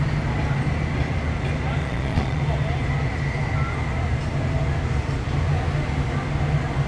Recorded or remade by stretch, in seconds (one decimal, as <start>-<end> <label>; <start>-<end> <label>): 0.0-1.8 recorded; 1.8-2.4 remade; 2.4-6.9 recorded